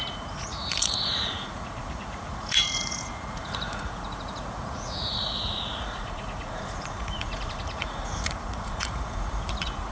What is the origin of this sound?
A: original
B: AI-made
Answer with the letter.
B